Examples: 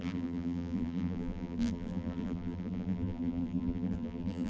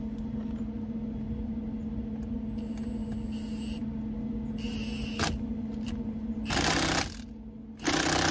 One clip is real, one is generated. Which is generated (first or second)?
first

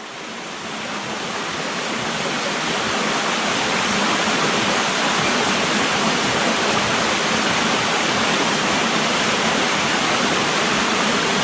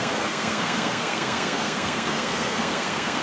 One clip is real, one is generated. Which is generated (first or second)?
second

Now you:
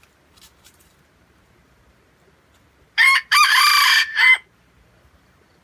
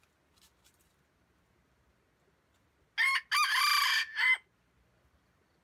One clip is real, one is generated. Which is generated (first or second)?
first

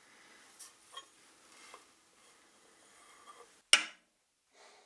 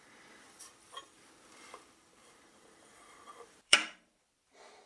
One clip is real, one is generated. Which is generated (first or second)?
second